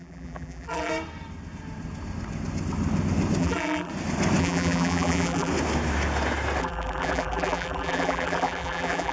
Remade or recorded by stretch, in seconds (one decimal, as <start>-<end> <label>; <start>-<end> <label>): 0.0-0.9 remade; 0.9-3.4 recorded; 3.4-3.9 remade; 3.9-4.4 recorded; 4.4-5.5 remade; 5.5-6.6 recorded; 6.6-9.1 remade